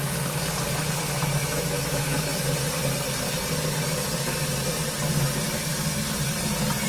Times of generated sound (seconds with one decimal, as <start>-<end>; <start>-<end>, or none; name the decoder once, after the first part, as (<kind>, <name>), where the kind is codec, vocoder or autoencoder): 1.4-2.3 (autoencoder, DAC-VAE)